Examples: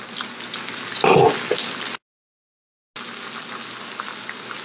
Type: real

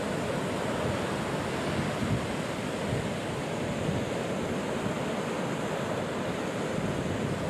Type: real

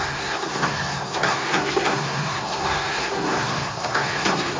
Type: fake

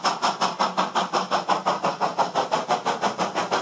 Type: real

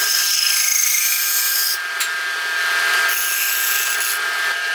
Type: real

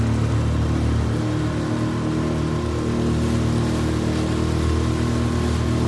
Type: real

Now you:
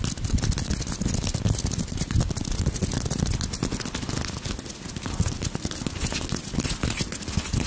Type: real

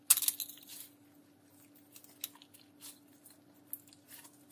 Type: real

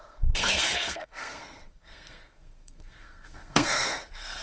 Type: fake